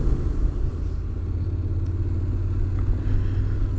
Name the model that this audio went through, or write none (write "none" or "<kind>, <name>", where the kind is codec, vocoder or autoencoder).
none